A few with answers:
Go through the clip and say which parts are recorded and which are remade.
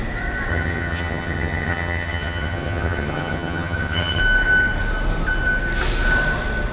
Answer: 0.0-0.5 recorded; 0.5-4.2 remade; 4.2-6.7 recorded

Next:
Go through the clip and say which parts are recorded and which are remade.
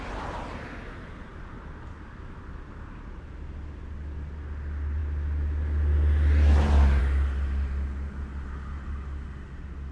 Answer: 0.0-9.9 recorded